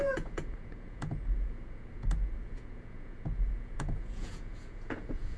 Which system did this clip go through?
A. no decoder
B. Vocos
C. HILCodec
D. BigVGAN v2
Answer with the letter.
B